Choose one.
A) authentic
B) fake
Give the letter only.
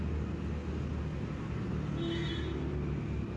A